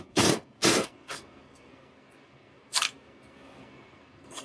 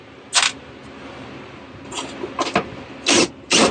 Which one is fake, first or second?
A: first